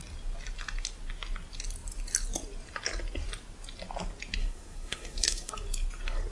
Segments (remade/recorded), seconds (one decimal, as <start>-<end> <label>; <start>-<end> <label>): 0.0-4.4 recorded; 4.4-5.5 remade; 5.5-6.3 recorded